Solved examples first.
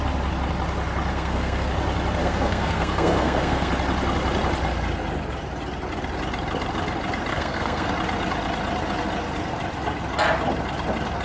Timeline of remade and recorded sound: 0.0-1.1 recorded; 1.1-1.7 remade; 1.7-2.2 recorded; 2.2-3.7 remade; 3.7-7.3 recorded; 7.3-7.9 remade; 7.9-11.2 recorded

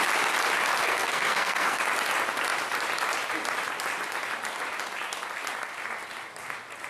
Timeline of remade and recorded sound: 0.0-0.8 recorded; 0.8-1.8 remade; 1.8-6.9 recorded

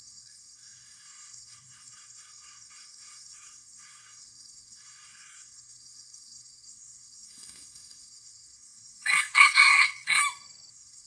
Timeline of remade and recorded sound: 0.0-10.2 remade; 10.2-10.7 recorded; 10.7-11.1 remade